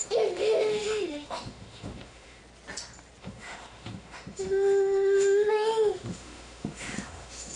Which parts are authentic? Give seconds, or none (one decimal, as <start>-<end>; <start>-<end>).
2.4-3.2